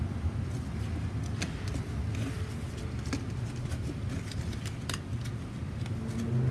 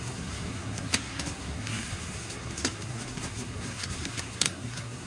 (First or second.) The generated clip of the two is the second